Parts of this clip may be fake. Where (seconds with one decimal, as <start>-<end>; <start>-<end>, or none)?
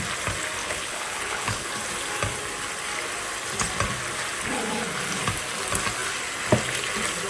0.6-1.7